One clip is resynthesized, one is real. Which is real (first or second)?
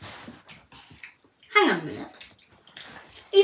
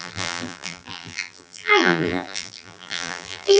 first